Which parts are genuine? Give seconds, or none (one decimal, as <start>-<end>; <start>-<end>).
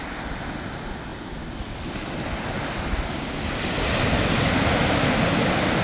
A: 0.0-5.8